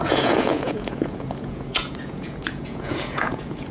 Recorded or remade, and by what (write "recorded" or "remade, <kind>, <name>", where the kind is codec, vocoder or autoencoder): remade, vocoder, Vocos